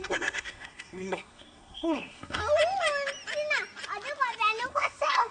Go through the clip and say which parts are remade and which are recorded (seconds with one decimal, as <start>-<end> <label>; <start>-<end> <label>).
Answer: 0.0-2.4 remade; 2.4-4.7 recorded; 4.7-5.3 remade